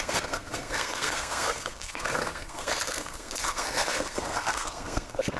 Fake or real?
fake